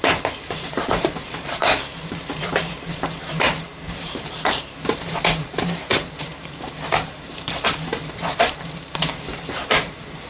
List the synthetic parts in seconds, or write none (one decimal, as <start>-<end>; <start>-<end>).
0.0-10.3